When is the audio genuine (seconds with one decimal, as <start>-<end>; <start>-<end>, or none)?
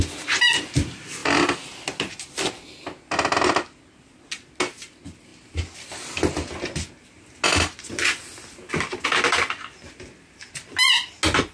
0.0-11.5